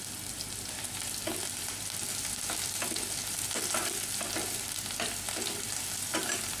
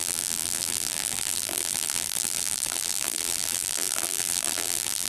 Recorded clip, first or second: first